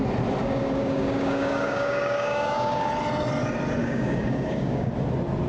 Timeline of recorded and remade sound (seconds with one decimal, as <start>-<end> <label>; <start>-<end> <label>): 0.0-0.4 recorded; 0.4-2.9 remade; 2.9-3.8 recorded; 3.8-4.9 remade; 4.9-5.5 recorded

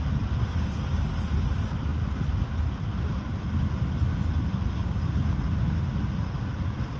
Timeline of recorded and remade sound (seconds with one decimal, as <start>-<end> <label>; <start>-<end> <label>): 0.0-0.4 recorded; 0.4-1.0 remade; 1.0-4.8 recorded; 4.8-5.3 remade; 5.3-7.0 recorded